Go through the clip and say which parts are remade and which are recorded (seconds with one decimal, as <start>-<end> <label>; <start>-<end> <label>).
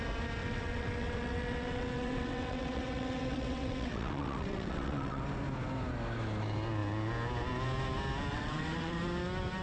0.0-0.4 recorded; 0.4-5.2 remade; 5.2-8.3 recorded; 8.3-9.0 remade; 9.0-9.6 recorded